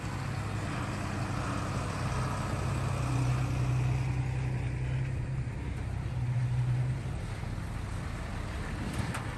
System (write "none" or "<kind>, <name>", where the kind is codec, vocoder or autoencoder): none